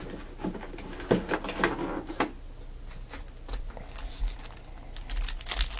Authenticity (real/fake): real